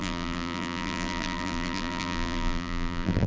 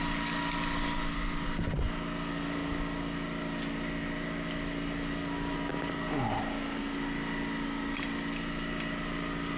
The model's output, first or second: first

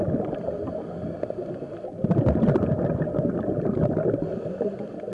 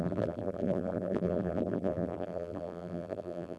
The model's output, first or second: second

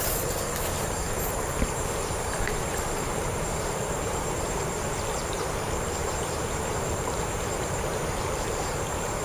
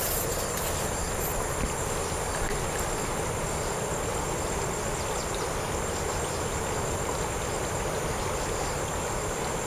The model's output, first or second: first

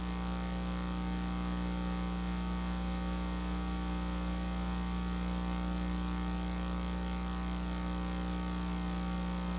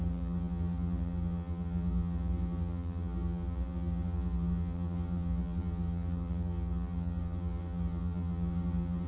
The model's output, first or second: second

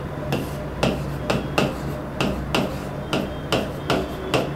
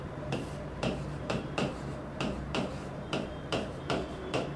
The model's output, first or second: second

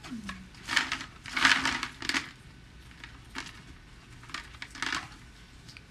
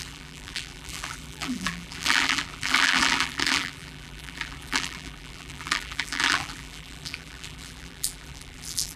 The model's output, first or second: second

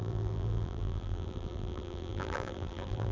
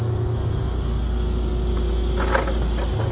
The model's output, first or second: first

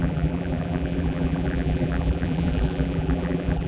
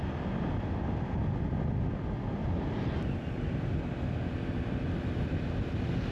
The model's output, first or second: first